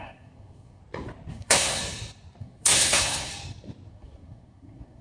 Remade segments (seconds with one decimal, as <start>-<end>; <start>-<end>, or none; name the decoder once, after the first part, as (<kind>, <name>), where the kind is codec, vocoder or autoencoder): 0.0-0.8 (codec, SNAC); 1.3-1.8; 2.4-3.3; 3.9-5.0